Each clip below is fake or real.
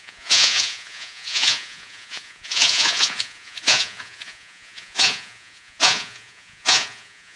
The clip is fake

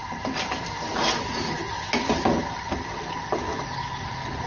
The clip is real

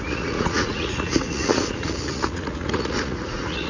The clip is fake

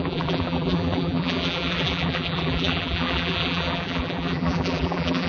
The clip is fake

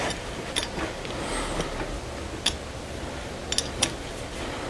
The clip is real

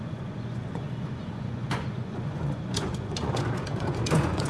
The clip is fake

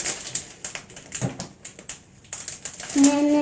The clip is real